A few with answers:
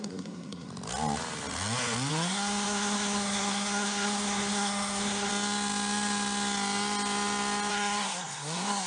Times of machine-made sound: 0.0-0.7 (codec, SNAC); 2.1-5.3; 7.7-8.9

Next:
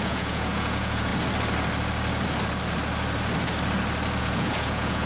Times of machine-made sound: 0.0-1.1 (vocoder, Vocos); 4.2-5.1

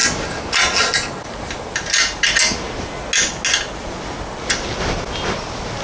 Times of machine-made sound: none

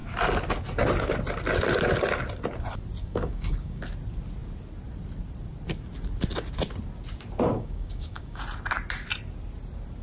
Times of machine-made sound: 3.0-3.8 (codec, DAC); 7.5-8.4

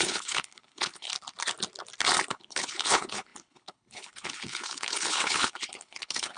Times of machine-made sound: 0.0-1.1 (codec, HILCodec); 2.3-6.4

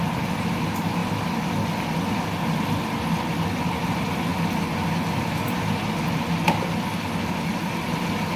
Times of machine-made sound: none